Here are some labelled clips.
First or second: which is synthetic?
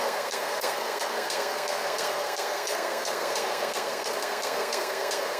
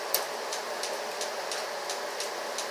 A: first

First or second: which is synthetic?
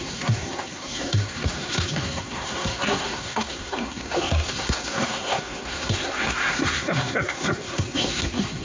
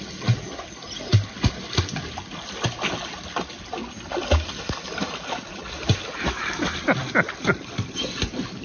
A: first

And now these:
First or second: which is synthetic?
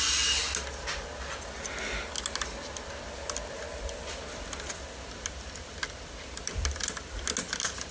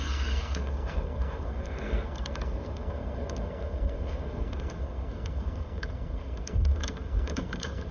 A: second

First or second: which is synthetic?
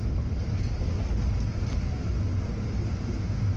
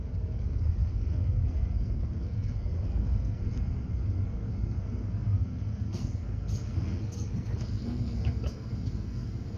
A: second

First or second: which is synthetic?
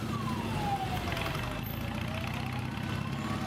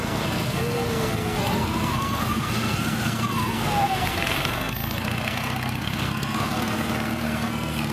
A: second